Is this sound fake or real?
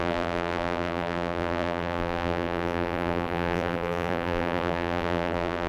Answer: fake